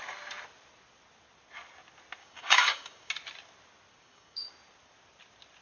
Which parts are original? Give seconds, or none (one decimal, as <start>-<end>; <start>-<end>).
0.0-2.2; 3.1-4.0; 4.5-5.6